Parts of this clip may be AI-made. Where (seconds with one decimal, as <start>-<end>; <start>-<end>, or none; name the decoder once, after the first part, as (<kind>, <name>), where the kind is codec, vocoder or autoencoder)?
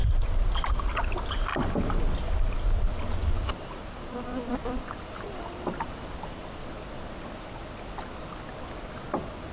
0.0-0.9 (vocoder, BigVGAN v2); 1.5-2.4; 3.8-5.1